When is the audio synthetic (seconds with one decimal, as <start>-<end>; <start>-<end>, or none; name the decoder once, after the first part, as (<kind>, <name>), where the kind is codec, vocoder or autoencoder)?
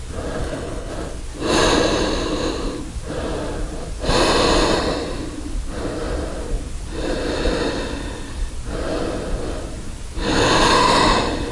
0.4-0.9 (codec, HILCodec)